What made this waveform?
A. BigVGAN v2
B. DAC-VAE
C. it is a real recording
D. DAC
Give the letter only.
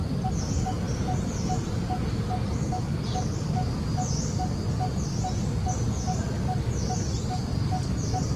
C